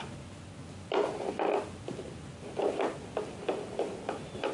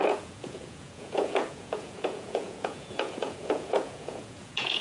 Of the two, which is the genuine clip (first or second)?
first